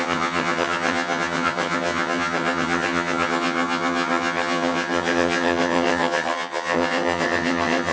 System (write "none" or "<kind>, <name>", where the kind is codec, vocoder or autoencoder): vocoder, HiFi-GAN